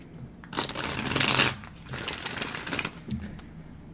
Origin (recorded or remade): recorded